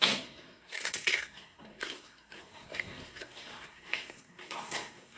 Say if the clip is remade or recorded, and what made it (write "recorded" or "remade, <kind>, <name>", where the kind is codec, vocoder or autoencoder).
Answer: remade, codec, SNAC